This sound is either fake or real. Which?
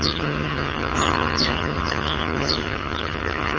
fake